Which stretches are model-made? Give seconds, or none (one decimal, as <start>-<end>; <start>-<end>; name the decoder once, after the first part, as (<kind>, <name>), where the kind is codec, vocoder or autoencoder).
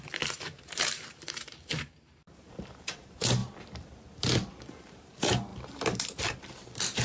0.0-3.4 (vocoder, BigVGAN v2); 4.7-7.0